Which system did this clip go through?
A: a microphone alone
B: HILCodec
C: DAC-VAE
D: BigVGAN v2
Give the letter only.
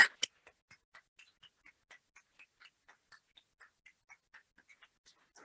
A